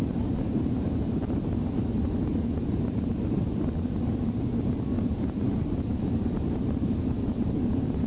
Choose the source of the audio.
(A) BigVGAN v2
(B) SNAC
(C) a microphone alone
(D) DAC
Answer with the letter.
A